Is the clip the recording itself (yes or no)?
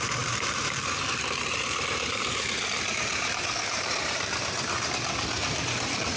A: no